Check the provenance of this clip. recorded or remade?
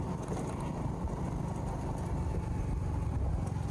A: recorded